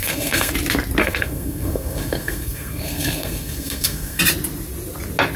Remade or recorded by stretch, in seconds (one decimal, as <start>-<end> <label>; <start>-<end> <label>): 0.0-0.5 remade; 0.5-1.0 recorded; 1.0-4.2 remade; 4.2-5.4 recorded